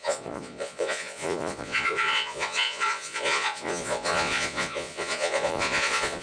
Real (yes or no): no